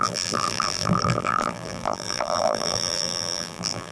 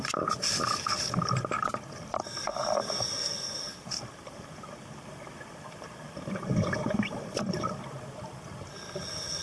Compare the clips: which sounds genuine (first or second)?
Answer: second